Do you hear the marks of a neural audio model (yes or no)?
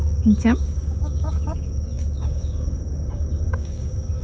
yes